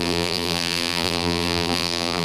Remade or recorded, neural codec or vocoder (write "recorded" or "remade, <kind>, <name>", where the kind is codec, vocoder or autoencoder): remade, vocoder, BigVGAN v2